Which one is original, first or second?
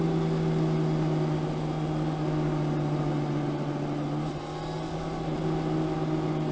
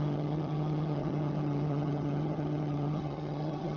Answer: first